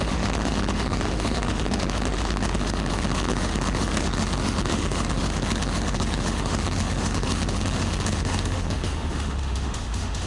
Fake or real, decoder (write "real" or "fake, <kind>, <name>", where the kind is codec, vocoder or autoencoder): fake, autoencoder, DAC-VAE